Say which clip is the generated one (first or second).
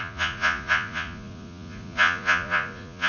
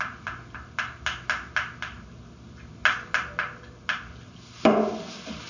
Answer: first